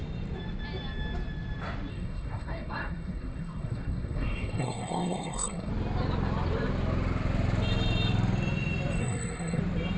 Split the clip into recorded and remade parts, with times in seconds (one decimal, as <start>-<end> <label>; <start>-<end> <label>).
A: 0.0-1.9 recorded; 1.9-5.7 remade; 5.7-9.0 recorded; 9.0-9.6 remade; 9.6-10.0 recorded